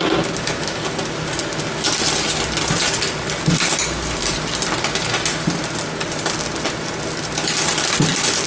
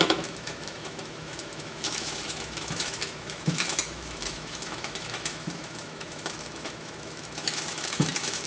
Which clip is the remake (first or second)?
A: second